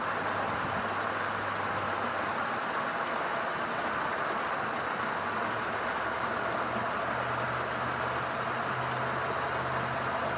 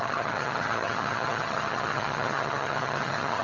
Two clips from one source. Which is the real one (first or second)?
first